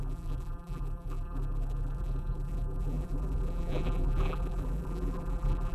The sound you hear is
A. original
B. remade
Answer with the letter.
B